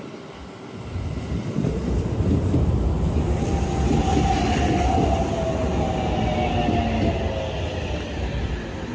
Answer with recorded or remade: recorded